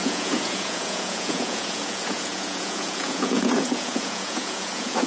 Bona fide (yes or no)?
no